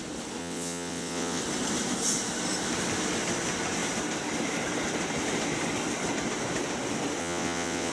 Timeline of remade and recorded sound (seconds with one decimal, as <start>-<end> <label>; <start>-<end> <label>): 0.0-0.4 recorded; 0.4-1.4 remade; 1.4-7.2 recorded; 7.2-7.9 remade